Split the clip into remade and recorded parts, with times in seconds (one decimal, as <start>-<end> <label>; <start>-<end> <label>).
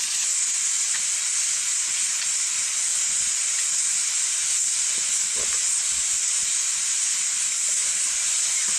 0.0-8.8 recorded